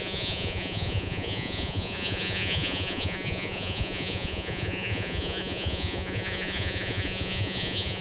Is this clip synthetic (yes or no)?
yes